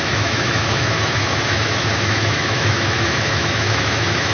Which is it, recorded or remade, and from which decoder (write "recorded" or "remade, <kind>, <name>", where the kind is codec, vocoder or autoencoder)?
remade, autoencoder, DAC-VAE